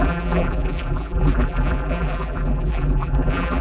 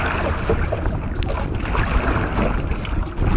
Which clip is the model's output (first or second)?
first